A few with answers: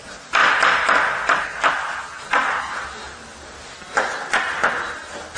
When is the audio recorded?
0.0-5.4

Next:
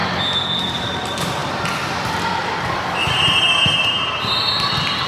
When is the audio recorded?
0.0-0.8